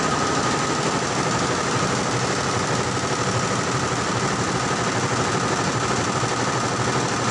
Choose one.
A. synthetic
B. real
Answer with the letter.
B